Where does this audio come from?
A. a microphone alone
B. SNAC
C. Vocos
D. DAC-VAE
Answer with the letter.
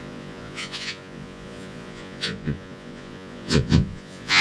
C